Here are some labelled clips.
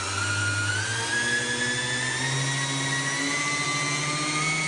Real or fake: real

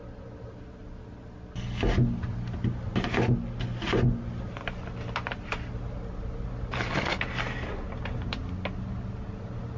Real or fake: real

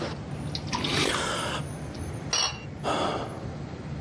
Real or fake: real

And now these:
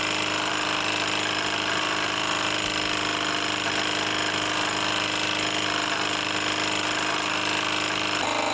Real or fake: real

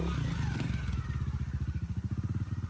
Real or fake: real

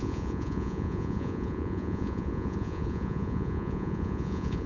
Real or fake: fake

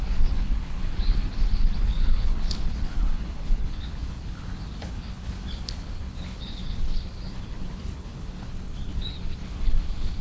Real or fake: fake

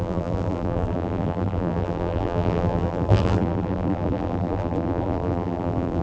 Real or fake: fake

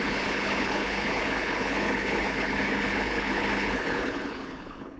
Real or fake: fake